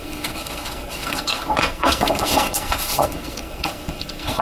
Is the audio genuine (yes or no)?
no